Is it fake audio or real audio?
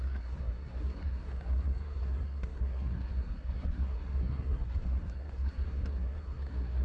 fake